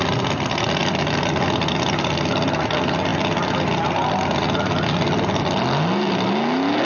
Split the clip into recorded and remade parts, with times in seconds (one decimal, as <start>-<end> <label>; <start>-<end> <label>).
0.0-6.8 recorded